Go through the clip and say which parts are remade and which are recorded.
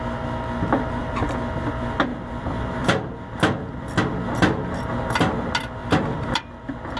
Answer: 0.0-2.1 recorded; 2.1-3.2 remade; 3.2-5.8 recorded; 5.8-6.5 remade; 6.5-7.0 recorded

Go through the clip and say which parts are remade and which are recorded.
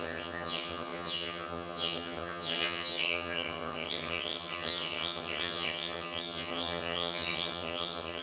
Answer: 0.0-8.2 remade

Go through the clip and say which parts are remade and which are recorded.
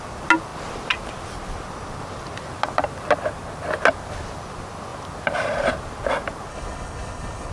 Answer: 0.0-6.5 recorded; 6.5-7.5 remade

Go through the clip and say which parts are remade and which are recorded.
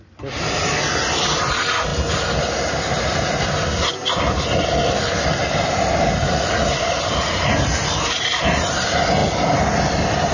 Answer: 0.0-10.3 recorded